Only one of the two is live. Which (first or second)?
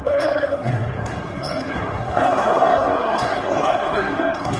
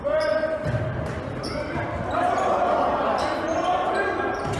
second